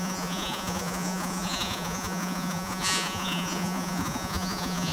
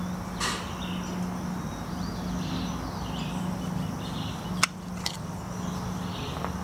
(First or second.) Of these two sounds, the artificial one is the first